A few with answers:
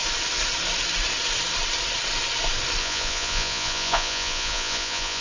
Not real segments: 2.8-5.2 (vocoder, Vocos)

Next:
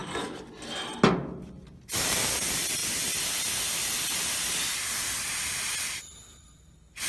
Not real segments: 0.0-0.5 (vocoder, BigVGAN v2)

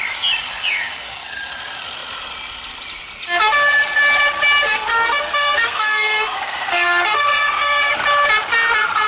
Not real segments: 4.6-7.9 (codec, SNAC)

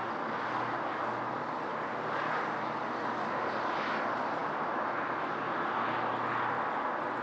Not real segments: none